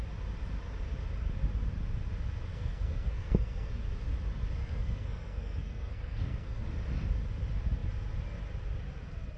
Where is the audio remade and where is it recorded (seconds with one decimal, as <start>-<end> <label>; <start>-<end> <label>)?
0.0-2.5 recorded; 2.5-3.7 remade; 3.7-4.6 recorded; 4.6-6.6 remade; 6.6-9.4 recorded